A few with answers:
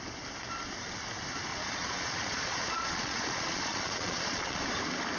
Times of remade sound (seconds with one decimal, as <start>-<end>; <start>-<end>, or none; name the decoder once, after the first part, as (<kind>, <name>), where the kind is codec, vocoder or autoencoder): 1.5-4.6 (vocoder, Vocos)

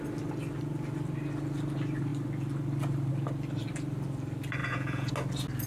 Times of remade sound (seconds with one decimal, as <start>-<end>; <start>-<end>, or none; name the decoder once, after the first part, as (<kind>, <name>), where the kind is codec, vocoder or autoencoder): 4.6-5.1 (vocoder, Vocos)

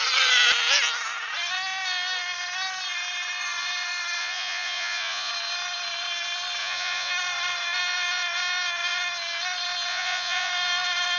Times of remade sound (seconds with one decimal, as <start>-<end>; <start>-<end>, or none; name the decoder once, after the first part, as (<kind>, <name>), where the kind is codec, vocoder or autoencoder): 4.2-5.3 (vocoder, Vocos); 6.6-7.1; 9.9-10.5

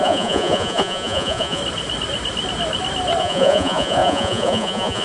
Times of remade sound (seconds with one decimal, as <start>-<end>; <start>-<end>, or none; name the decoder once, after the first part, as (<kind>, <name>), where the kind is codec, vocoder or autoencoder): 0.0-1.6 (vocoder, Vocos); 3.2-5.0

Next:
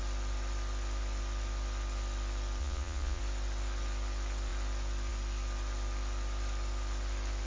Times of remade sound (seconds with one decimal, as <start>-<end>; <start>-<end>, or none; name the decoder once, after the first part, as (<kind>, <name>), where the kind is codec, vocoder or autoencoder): 2.6-3.2 (vocoder, Vocos)

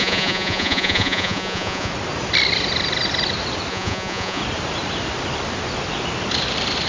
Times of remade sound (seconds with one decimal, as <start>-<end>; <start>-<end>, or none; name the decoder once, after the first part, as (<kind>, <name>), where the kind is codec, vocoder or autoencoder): 0.0-1.9 (vocoder, Vocos); 3.7-4.4